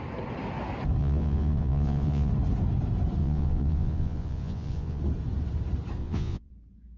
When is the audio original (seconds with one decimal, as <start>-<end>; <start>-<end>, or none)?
0.0-1.0; 2.3-3.2; 5.0-6.0; 6.5-7.0